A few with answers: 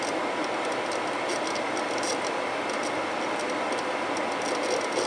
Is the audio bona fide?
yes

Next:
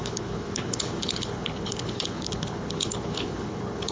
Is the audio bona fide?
no